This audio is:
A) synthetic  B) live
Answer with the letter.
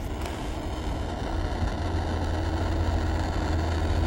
B